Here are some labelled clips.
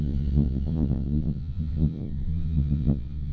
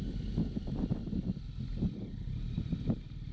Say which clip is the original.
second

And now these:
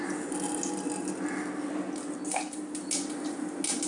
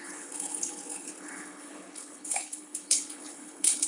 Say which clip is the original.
first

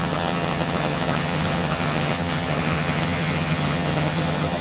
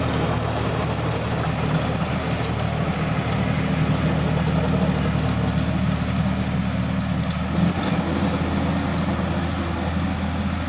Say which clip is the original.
second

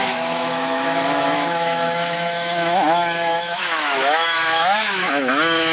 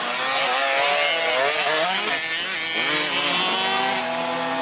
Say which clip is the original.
second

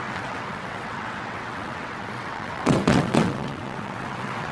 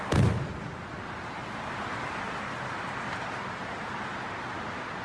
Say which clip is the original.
second